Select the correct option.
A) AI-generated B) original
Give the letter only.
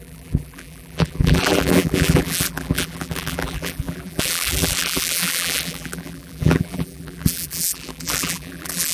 A